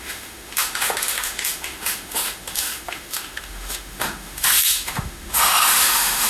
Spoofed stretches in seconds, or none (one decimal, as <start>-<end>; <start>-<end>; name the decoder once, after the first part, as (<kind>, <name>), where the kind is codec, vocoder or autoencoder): 0.0-6.3 (autoencoder, DAC-VAE)